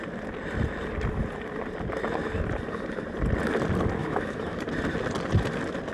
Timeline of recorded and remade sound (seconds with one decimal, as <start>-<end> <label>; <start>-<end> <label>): 0.0-4.0 recorded; 4.0-4.6 remade; 4.6-5.9 recorded